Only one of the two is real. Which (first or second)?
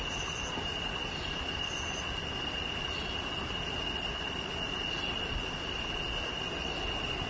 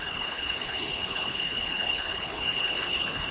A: first